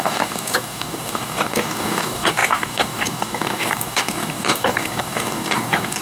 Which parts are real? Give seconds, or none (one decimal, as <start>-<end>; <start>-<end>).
none